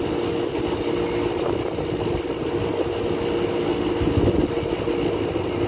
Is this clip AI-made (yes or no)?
no